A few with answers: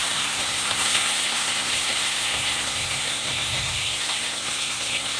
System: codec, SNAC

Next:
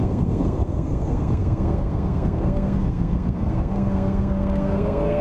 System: codec, SNAC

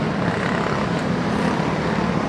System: none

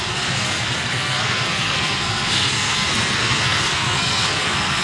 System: codec, SNAC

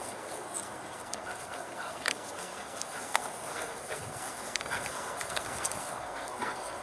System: codec, SNAC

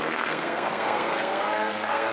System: codec, SNAC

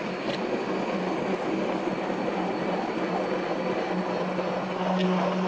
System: none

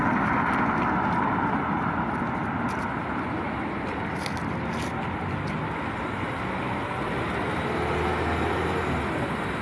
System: none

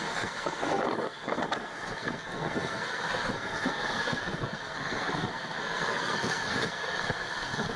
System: codec, SNAC